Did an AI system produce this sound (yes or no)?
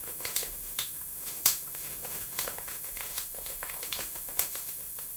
yes